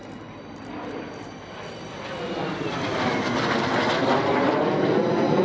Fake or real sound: real